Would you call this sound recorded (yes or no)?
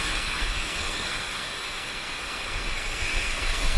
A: no